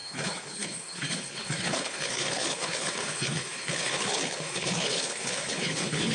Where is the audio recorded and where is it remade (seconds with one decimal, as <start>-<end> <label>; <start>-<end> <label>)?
0.0-6.1 remade